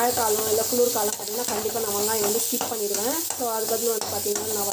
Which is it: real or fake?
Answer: real